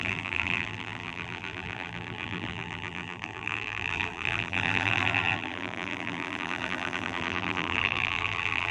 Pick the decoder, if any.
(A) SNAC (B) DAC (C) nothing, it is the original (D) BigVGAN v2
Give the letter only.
D